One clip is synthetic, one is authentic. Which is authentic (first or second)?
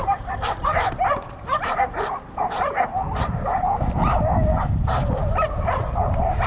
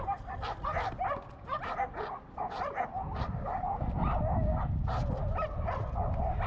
second